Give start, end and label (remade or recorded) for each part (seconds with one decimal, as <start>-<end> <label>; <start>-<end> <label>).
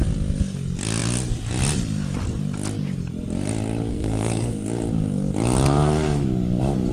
0.0-3.9 recorded; 3.9-4.5 remade; 4.5-6.9 recorded